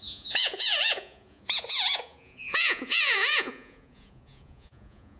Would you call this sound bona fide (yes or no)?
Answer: no